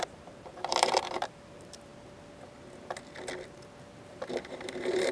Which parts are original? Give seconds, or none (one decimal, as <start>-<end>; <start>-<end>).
1.9-4.1